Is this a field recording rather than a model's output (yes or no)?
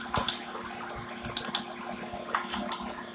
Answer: yes